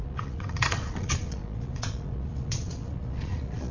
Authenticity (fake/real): fake